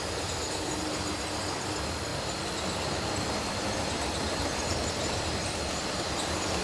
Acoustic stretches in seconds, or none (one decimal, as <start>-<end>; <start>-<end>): 0.0-6.6